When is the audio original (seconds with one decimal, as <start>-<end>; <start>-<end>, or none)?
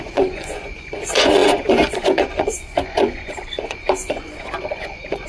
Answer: none